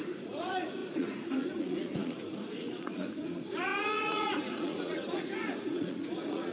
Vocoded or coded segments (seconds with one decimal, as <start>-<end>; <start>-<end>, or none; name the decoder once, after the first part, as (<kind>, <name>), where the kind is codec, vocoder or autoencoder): 0.0-6.5 (vocoder, Vocos)